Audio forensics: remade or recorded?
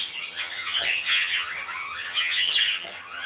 remade